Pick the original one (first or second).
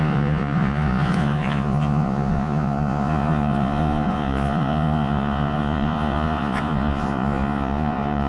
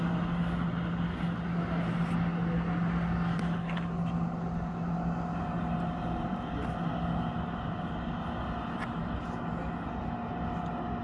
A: second